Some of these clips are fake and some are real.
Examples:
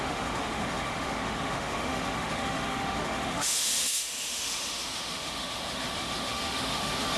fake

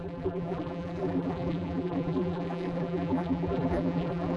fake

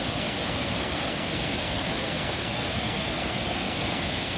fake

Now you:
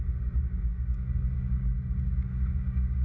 fake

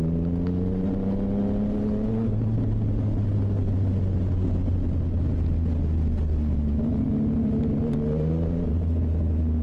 real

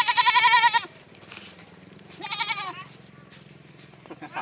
fake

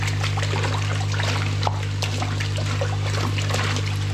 real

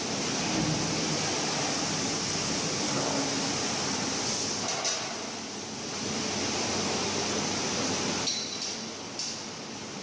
real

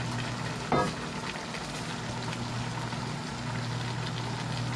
real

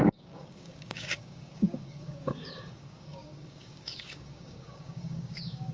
fake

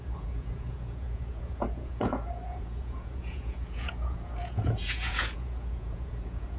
fake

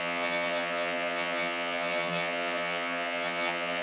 fake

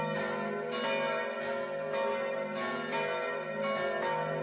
real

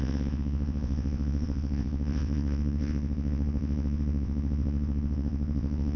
fake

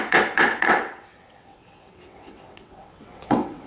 fake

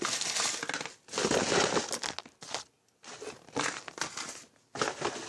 real